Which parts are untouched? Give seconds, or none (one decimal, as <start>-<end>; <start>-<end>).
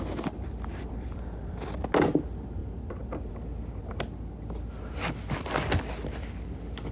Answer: 0.0-0.7; 1.8-2.6; 3.3-6.9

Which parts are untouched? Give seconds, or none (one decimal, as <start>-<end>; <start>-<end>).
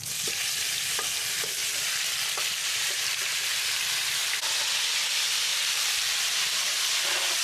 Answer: 0.0-2.6; 3.8-5.5; 6.8-7.4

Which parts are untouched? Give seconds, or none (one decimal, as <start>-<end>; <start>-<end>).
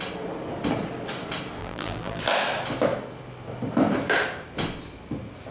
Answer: 0.0-1.6; 2.2-5.5